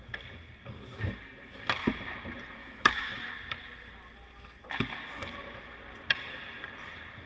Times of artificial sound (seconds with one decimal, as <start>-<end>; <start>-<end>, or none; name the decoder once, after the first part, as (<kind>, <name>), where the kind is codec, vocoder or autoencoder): 2.6-3.3 (autoencoder, DAC-VAE)